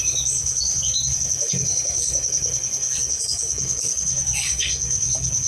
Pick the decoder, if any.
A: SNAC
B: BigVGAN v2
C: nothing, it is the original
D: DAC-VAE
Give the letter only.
A